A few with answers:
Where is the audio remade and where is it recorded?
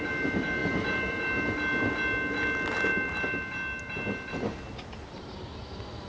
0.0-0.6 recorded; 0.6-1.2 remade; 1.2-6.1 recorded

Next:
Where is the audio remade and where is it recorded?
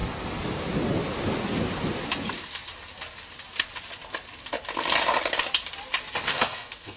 0.0-6.3 recorded; 6.3-7.0 remade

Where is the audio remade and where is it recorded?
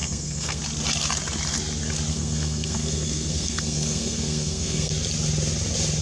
0.0-0.6 remade; 0.6-2.1 recorded; 2.1-4.9 remade; 4.9-6.0 recorded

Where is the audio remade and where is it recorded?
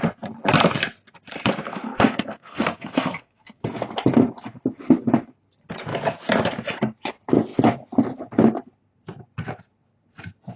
0.0-1.7 recorded; 1.7-3.6 remade; 3.6-10.6 recorded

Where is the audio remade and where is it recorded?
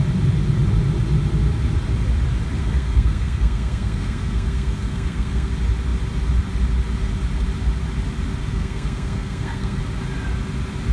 0.0-2.6 recorded; 2.6-5.5 remade; 5.5-8.4 recorded; 8.4-9.8 remade; 9.8-10.9 recorded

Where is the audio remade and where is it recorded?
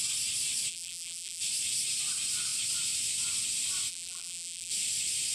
0.0-0.7 recorded; 0.7-1.4 remade; 1.4-3.9 recorded; 3.9-4.7 remade; 4.7-5.3 recorded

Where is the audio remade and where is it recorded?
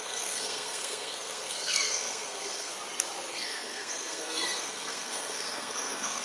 0.0-2.7 remade; 2.7-3.3 recorded; 3.3-6.2 remade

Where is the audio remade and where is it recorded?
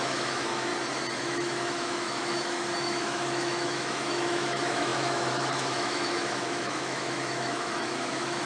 0.0-0.7 remade; 0.7-1.2 recorded; 1.2-8.5 remade